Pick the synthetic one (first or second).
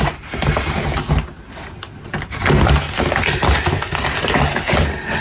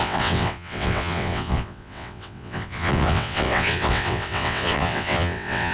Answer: second